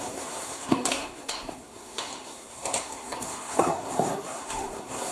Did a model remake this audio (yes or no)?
yes